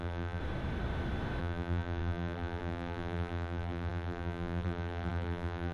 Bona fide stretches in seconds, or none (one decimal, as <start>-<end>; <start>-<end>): 0.4-1.4